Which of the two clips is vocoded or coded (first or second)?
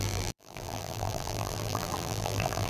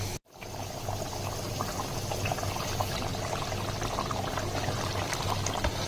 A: first